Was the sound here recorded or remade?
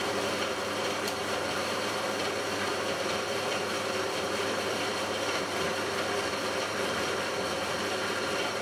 remade